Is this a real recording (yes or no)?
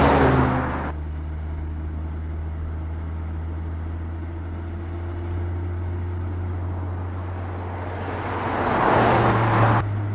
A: yes